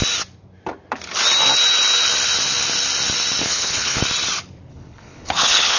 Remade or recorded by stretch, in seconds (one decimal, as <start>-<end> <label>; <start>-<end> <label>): 0.0-3.4 recorded; 3.4-4.0 remade; 4.0-4.7 recorded; 4.7-5.8 remade